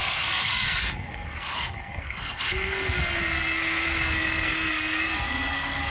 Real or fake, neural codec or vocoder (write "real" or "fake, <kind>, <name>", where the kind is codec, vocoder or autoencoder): fake, codec, SNAC